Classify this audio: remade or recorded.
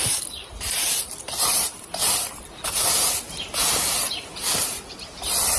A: remade